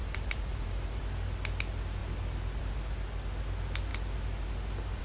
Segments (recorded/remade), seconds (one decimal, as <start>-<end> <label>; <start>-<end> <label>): 0.0-1.0 remade; 1.0-5.0 recorded